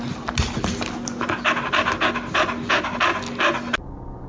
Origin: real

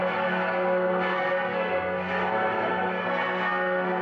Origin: fake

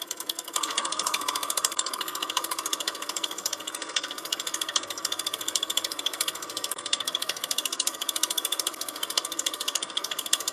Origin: fake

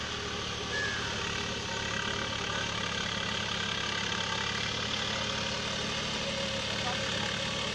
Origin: real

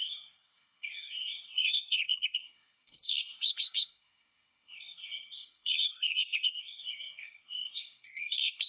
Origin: fake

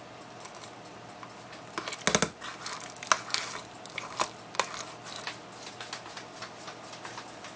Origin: real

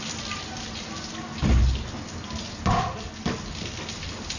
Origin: real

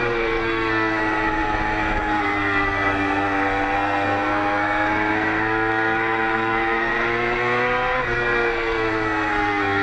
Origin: fake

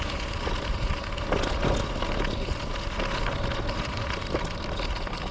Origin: real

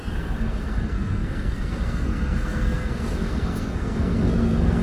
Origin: fake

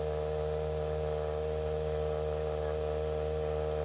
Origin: real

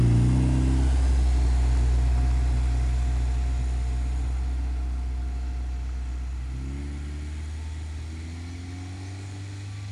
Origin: real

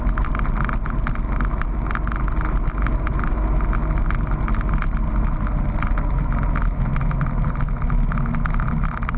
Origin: real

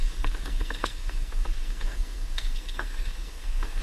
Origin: fake